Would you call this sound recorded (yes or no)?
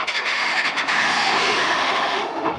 no